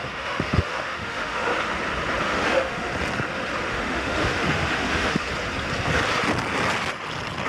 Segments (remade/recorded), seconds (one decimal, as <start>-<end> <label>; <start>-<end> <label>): 0.0-1.5 remade; 1.5-2.2 recorded; 2.2-2.9 remade; 2.9-3.7 recorded; 3.7-5.3 remade; 5.3-7.5 recorded